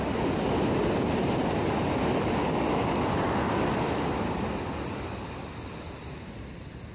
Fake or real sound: real